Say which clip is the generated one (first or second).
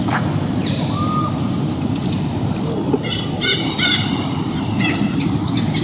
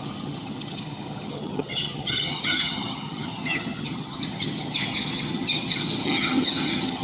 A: second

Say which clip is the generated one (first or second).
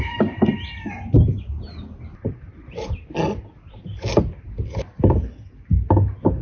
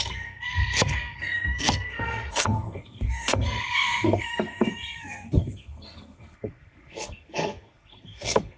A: second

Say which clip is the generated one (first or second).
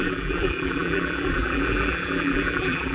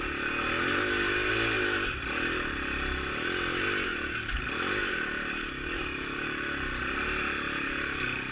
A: first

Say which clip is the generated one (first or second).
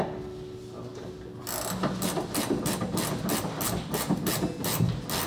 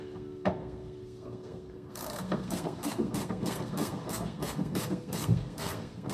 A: second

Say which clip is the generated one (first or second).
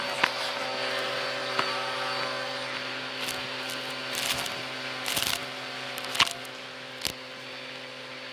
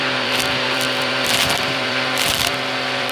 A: second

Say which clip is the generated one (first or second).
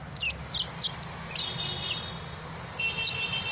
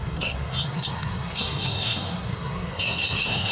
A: second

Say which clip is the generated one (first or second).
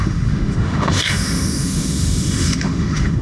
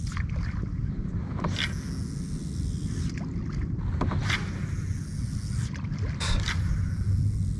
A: first